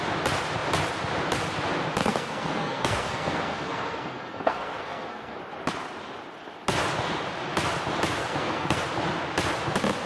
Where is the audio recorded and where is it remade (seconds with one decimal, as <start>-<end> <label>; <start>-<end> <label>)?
0.0-2.0 recorded; 2.0-5.4 remade; 5.4-8.2 recorded; 8.2-8.8 remade; 8.8-10.1 recorded